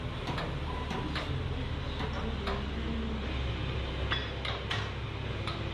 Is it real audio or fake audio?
real